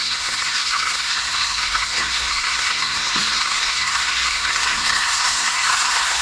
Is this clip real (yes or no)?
no